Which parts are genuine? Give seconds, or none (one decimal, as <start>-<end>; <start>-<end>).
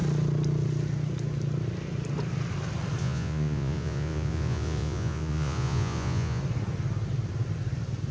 0.0-3.0; 6.4-8.1